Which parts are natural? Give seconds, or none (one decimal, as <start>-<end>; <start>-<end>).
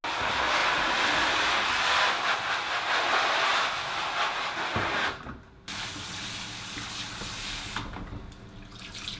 0.0-9.2